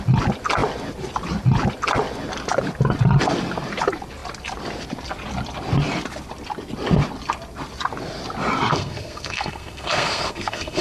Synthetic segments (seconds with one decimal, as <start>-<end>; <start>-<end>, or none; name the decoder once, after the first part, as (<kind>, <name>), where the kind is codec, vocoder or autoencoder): 8.7-10.8 (codec, SNAC)